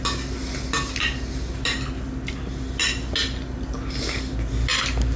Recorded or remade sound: recorded